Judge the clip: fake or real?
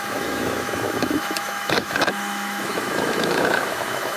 fake